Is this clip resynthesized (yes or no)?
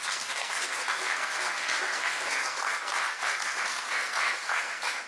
yes